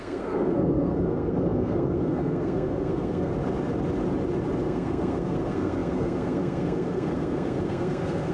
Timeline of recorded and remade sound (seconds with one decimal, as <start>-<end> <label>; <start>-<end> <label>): 0.0-3.3 remade; 3.3-4.6 recorded; 4.6-8.3 remade